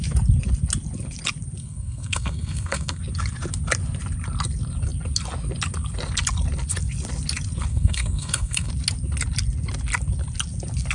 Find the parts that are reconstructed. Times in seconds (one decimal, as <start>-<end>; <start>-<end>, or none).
1.6-3.0; 7.7-8.7